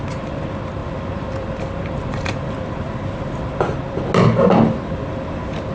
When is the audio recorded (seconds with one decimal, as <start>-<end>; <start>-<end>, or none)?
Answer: 0.0-5.7